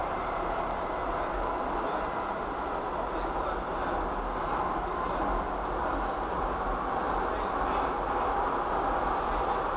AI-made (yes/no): no